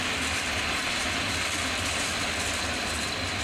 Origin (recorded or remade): recorded